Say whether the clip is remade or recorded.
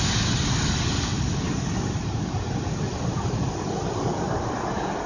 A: recorded